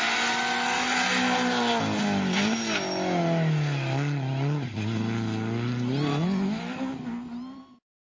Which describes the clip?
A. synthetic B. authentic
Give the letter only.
B